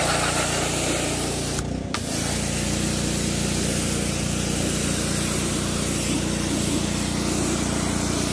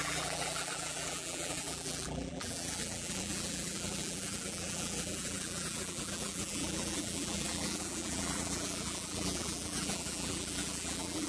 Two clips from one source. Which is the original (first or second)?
first